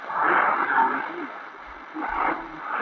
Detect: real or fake real